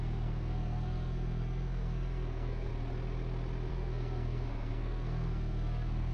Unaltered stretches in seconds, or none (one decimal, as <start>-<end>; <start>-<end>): 2.7-3.7

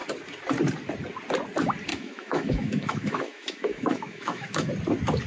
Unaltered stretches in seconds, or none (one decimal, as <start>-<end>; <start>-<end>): 0.0-1.9; 4.7-5.3

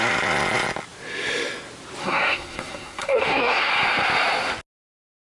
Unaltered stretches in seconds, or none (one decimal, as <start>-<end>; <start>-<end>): 0.0-2.0; 3.7-5.3

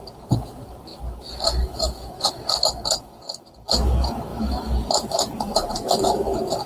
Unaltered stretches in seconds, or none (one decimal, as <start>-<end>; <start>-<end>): none